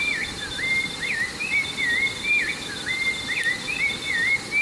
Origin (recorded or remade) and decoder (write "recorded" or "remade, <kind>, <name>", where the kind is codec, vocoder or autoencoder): recorded